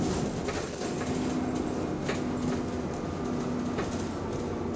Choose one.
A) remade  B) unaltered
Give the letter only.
B